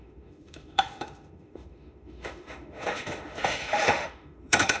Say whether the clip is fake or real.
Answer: fake